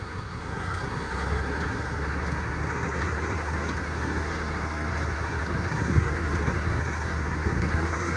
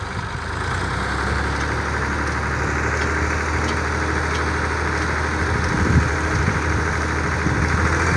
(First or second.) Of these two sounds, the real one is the second